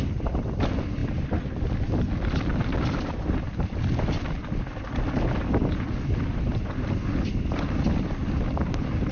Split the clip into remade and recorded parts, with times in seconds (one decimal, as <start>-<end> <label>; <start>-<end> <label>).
0.0-9.1 recorded